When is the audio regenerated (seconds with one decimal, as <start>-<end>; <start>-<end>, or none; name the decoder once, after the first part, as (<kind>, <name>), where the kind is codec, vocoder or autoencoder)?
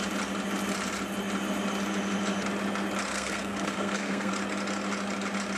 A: 3.1-4.3 (codec, SNAC)